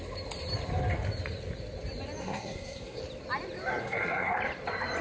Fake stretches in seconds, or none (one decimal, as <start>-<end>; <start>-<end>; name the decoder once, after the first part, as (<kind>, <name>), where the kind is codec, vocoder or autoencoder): 2.2-3.0 (codec, SNAC); 3.8-4.4